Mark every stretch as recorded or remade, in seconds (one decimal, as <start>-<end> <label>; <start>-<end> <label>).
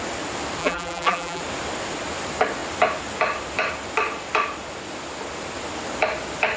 0.0-0.6 recorded; 0.6-1.4 remade; 1.4-6.6 recorded